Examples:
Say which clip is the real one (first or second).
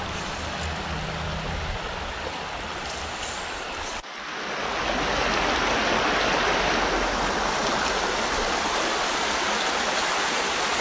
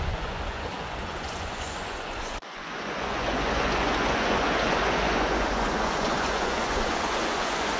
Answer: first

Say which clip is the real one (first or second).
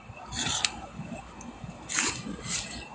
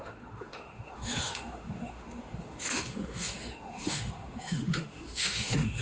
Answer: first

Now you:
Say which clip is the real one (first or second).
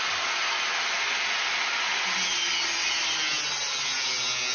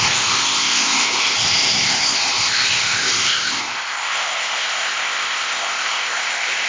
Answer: first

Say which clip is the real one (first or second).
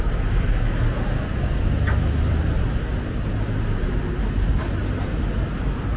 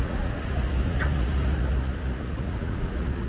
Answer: first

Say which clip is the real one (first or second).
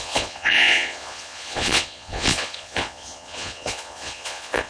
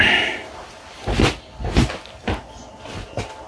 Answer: second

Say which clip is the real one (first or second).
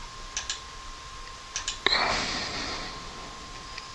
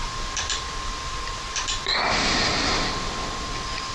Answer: first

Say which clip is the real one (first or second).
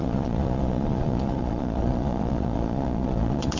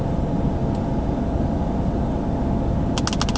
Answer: second